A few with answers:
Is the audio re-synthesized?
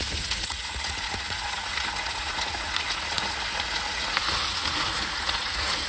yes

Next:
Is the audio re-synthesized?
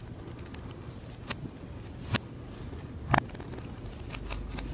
no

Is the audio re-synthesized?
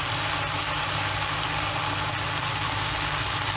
no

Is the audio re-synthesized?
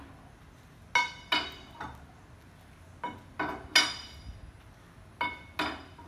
no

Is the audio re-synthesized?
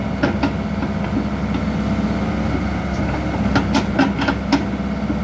no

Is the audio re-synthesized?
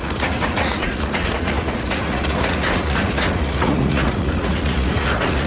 yes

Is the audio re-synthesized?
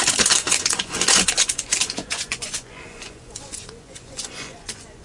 yes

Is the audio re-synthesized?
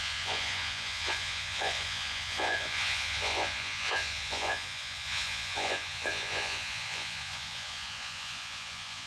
yes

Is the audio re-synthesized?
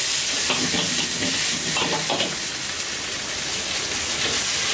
no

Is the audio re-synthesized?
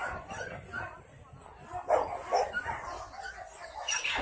no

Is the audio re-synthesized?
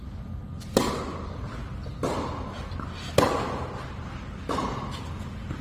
no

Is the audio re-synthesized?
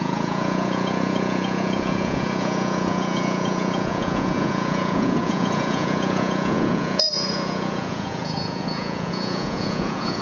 yes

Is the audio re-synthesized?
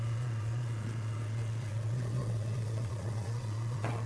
yes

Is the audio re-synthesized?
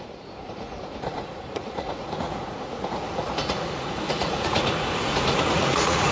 yes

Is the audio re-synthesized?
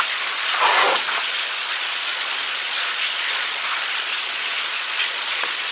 yes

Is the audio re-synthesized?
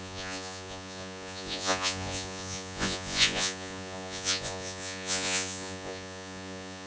yes